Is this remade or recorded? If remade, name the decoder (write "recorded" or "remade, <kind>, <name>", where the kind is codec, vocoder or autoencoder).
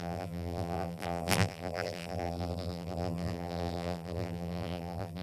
remade, vocoder, BigVGAN v2